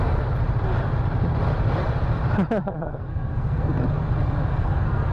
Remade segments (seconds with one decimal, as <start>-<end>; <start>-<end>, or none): 2.6-4.0; 4.5-5.1